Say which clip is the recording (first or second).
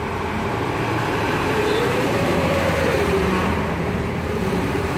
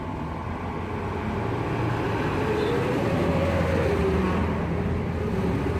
second